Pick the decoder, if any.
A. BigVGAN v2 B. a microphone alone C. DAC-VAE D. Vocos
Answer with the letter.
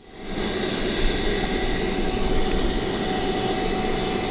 B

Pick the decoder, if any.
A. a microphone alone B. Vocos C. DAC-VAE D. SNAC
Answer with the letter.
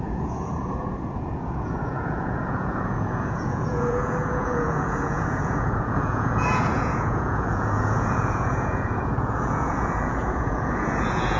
B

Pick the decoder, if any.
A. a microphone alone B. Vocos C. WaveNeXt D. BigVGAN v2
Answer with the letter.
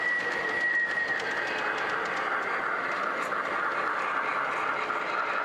A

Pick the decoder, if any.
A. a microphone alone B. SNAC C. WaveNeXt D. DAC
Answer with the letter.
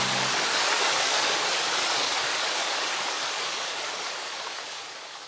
D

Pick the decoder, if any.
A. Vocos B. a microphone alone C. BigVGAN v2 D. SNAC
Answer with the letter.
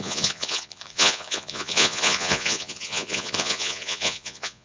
A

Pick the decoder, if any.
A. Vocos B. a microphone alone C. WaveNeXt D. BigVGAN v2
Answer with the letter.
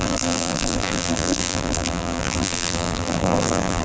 D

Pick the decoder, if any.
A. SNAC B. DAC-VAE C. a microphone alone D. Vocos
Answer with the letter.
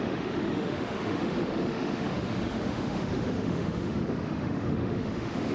B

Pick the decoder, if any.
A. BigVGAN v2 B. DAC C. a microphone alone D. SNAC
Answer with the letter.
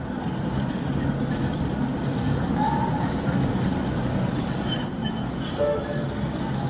C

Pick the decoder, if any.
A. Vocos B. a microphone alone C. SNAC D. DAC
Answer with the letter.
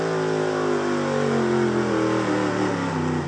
B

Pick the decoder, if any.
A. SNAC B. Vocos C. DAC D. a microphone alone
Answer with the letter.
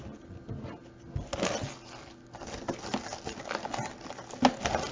D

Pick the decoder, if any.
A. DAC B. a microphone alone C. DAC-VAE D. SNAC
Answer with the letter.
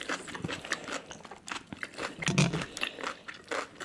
B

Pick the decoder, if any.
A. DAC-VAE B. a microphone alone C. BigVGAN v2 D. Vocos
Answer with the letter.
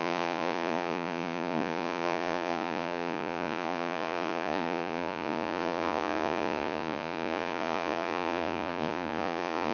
D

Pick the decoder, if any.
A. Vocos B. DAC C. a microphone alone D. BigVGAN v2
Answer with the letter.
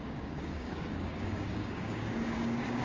B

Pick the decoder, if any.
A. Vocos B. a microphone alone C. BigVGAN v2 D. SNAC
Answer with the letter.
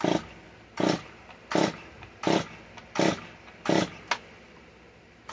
B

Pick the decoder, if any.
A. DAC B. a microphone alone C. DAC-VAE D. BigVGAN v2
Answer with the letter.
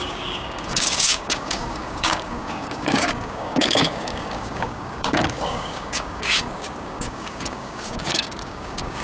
A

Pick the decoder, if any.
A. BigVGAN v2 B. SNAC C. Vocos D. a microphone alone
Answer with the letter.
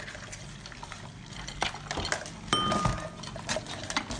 D